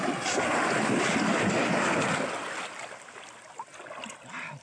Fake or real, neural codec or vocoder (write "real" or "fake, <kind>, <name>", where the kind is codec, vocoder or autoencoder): real